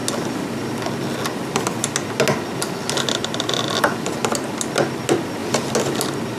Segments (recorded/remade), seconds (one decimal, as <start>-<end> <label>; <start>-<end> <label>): 0.0-6.4 recorded